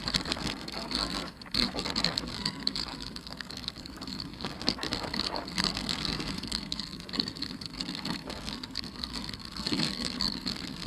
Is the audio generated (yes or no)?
yes